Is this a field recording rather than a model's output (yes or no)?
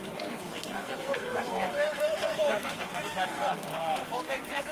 no